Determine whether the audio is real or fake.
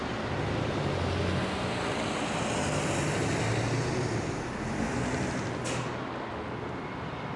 real